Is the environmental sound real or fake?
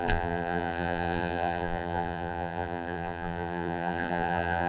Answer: fake